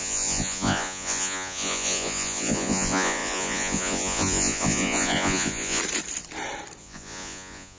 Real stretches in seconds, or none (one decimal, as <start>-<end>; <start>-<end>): 5.8-6.8